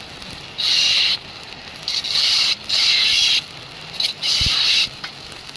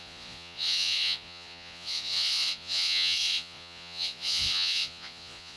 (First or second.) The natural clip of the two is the first